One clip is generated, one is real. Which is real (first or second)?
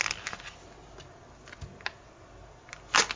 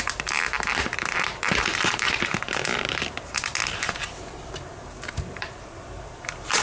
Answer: first